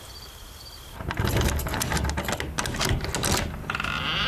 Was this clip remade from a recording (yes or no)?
no